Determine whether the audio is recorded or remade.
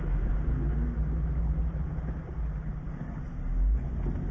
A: recorded